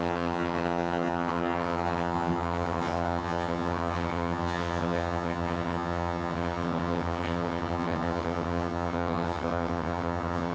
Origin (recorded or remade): remade